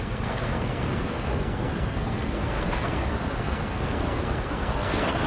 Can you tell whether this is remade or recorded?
remade